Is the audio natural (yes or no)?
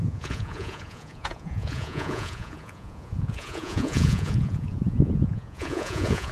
no